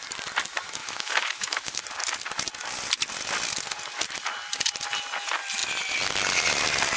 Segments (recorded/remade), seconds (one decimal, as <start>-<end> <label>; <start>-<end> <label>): 0.0-0.8 recorded; 0.8-1.8 remade; 1.8-7.0 recorded